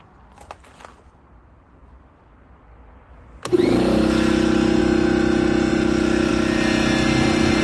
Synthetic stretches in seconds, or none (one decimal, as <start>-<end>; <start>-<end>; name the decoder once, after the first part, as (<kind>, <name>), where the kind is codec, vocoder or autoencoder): none